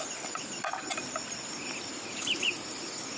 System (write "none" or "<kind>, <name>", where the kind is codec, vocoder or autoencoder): none